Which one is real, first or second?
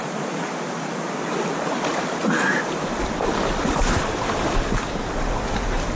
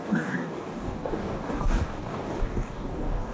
first